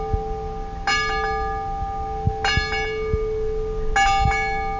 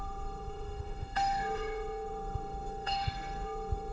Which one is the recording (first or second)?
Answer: first